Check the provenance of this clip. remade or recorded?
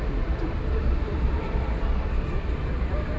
remade